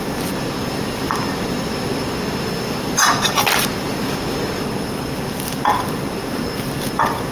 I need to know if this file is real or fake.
fake